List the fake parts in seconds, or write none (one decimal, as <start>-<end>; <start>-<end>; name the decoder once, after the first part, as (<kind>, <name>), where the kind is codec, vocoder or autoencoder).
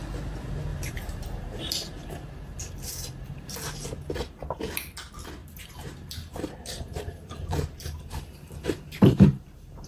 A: 0.7-1.6 (vocoder, BigVGAN v2); 5.4-9.9